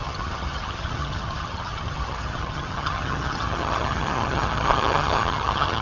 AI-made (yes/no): yes